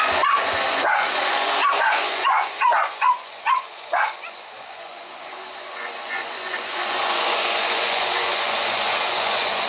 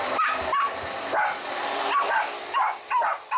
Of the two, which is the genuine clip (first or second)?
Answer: second